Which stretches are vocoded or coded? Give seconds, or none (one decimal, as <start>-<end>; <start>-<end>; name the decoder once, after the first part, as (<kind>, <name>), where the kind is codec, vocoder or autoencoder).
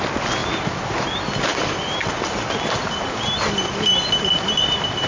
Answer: none